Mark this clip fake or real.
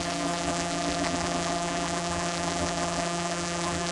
fake